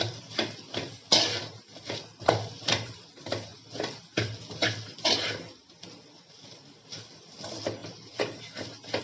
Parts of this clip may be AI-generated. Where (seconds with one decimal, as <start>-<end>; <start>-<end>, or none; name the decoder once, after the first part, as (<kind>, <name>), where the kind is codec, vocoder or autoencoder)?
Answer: none